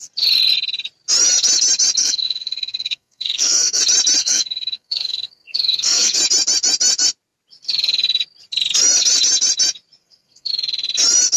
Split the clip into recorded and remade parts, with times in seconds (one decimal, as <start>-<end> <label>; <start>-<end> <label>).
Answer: 0.0-2.0 recorded; 2.0-3.8 remade; 3.8-4.2 recorded; 4.2-6.2 remade; 6.2-10.0 recorded; 10.0-10.5 remade; 10.5-11.4 recorded